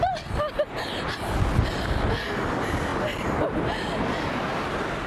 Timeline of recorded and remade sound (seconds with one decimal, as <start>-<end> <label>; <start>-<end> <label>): 0.0-5.1 recorded